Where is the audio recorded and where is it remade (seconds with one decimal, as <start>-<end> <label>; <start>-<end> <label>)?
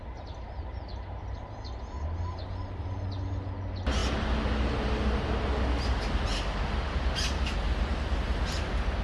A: 0.0-9.0 recorded